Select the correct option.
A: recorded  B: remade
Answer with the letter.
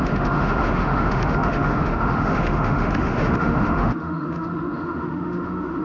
B